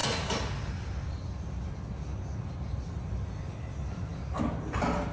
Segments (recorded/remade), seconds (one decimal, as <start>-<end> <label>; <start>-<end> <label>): 0.0-5.1 recorded